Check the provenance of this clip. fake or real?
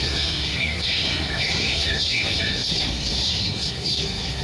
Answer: fake